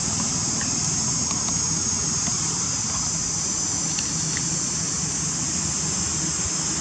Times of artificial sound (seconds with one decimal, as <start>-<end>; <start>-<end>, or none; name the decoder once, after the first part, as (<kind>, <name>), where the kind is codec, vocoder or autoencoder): 0.0-1.1 (vocoder, BigVGAN v2); 2.3-3.4